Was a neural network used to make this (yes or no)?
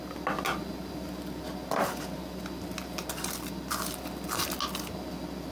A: no